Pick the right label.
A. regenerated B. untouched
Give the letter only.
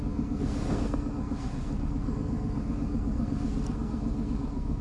A